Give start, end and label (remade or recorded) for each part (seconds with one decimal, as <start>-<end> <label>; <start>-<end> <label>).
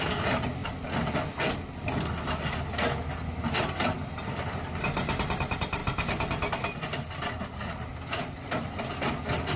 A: 0.0-9.6 recorded